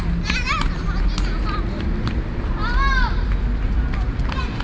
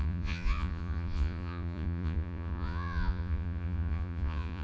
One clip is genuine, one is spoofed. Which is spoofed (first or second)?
second